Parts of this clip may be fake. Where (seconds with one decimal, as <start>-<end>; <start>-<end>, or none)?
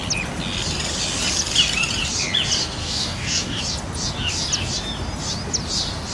2.8-3.6